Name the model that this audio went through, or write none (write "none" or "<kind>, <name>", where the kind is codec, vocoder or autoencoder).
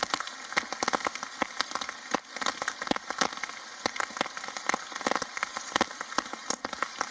none